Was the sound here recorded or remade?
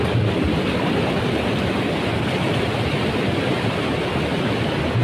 remade